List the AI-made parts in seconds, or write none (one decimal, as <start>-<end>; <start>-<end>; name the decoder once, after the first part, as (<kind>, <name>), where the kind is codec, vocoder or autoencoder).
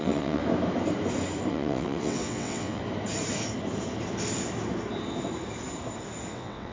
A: 0.0-0.4 (vocoder, WaveNeXt); 1.5-2.8; 6.3-6.7